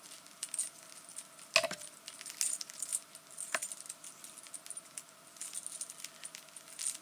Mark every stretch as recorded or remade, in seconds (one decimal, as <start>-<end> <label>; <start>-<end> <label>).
0.0-7.0 recorded